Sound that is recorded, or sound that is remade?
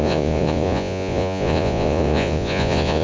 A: remade